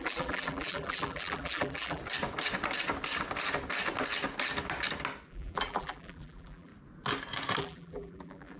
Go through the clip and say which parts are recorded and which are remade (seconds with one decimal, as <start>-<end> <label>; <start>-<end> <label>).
0.0-2.0 remade; 2.0-5.3 recorded; 5.3-6.7 remade; 6.7-7.6 recorded; 7.6-8.6 remade